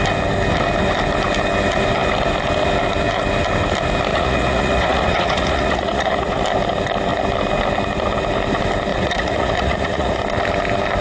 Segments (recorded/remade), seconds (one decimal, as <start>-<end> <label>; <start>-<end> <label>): 0.0-4.1 recorded; 4.1-6.4 remade; 6.4-8.9 recorded; 8.9-10.2 remade; 10.2-11.0 recorded